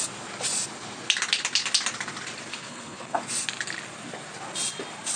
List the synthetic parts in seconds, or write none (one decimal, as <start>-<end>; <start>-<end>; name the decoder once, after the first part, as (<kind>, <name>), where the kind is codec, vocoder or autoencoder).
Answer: 2.5-3.2 (codec, HILCodec)